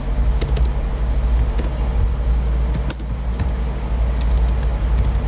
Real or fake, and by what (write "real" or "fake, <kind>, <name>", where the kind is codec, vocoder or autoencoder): real